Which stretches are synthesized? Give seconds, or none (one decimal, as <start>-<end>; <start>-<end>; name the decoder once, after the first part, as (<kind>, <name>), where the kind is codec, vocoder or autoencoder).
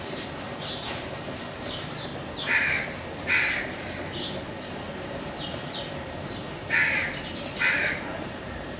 0.0-2.1 (vocoder, BigVGAN v2); 3.8-6.6; 7.8-8.8